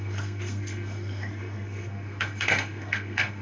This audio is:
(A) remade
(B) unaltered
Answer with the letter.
A